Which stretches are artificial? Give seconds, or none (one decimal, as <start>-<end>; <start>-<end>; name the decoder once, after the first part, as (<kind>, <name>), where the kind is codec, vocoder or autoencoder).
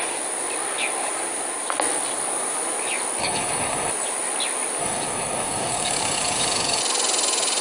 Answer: 3.2-3.9 (codec, DAC); 4.8-6.8